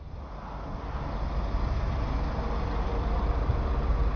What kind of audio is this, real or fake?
real